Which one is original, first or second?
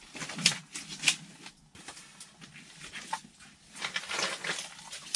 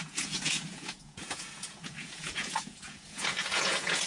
first